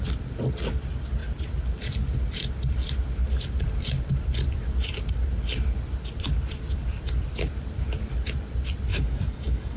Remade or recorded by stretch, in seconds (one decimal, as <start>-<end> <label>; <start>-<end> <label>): 0.0-8.9 recorded; 8.9-9.8 remade